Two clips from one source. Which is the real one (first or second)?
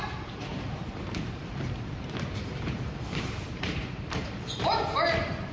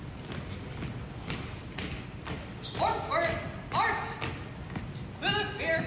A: second